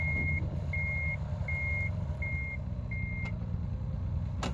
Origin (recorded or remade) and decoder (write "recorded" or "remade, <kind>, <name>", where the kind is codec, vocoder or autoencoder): recorded